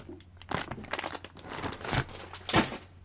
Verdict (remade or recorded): recorded